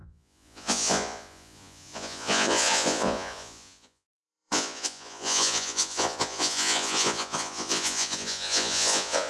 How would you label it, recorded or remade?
remade